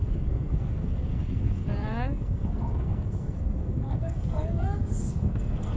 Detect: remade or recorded remade